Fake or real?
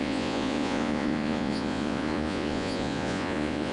fake